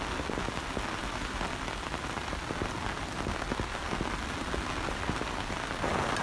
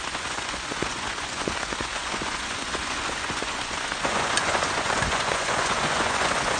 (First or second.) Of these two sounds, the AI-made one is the second